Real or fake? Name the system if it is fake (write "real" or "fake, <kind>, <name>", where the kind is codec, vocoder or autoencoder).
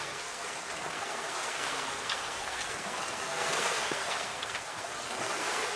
fake, codec, SNAC